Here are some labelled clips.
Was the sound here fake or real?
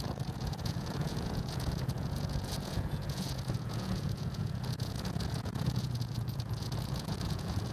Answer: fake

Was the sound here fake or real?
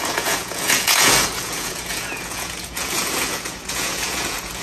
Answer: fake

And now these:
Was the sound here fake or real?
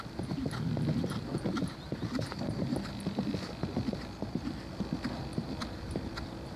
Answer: real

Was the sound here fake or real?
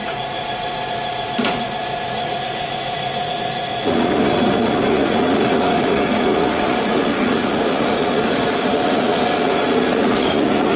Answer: fake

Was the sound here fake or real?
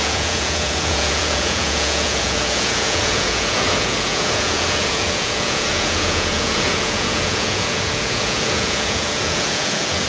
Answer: fake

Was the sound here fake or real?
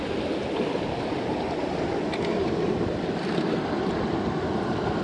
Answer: real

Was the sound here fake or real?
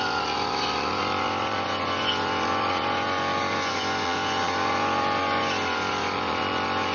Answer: fake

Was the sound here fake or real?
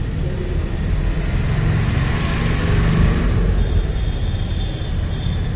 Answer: real